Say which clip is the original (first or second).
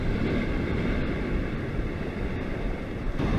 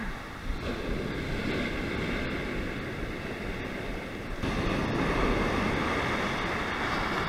second